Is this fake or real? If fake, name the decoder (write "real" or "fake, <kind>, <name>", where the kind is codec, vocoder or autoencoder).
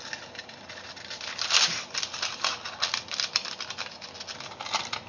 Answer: real